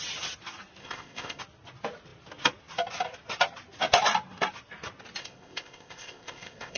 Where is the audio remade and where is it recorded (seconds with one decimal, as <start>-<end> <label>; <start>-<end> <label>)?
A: 0.0-0.8 recorded; 0.8-1.4 remade; 1.4-5.2 recorded; 5.2-6.8 remade